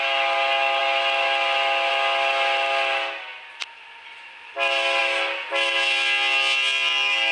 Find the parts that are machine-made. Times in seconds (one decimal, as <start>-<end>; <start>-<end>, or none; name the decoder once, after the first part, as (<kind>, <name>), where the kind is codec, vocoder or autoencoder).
none